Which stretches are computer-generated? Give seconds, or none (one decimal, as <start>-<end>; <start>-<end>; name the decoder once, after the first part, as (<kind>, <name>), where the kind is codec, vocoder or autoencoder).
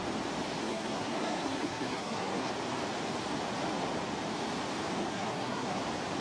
0.6-2.5 (codec, SNAC); 5.0-5.8